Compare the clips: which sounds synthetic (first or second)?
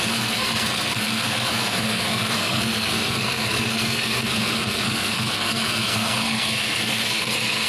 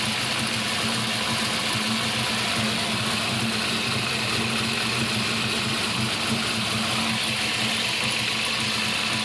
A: first